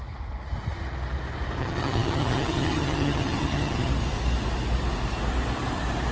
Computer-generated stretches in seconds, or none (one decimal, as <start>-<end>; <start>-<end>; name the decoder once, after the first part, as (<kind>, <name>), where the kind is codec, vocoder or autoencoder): 1.6-3.9 (vocoder, HiFi-GAN)